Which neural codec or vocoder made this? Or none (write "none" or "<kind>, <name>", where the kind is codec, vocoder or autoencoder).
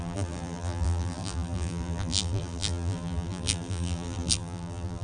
vocoder, BigVGAN v2